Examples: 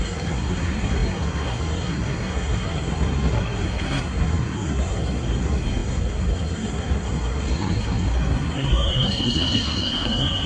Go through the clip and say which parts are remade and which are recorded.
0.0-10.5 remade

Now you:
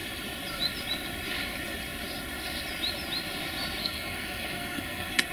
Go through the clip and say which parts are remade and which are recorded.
0.0-3.8 recorded; 3.8-5.3 remade

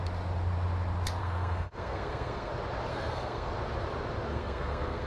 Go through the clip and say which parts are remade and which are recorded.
0.0-1.2 recorded; 1.2-2.5 remade; 2.5-2.9 recorded; 2.9-3.5 remade; 3.5-4.3 recorded; 4.3-5.1 remade

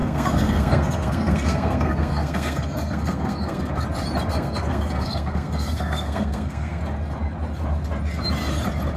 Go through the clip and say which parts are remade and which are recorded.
0.0-3.7 remade; 3.7-4.3 recorded; 4.3-6.8 remade; 6.8-9.0 recorded